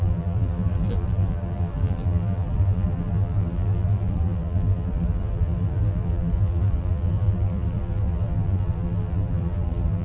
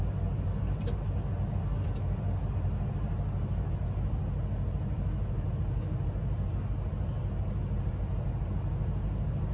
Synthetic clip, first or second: first